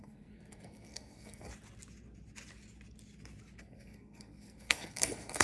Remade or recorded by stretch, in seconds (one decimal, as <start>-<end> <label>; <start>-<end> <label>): 0.0-1.5 remade; 1.5-3.6 recorded; 3.6-5.4 remade